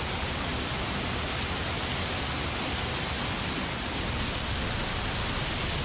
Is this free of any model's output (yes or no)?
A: yes